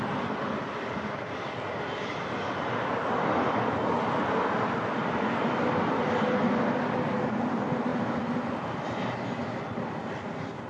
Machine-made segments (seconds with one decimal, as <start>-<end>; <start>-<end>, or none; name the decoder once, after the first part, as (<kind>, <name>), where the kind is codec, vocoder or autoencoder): none